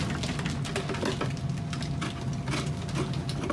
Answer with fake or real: real